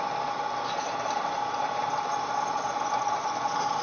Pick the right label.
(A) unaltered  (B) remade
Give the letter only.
A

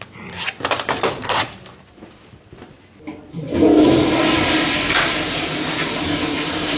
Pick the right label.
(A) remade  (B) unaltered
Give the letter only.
B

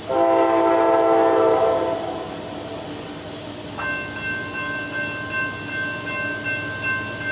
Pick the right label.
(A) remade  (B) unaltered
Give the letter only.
B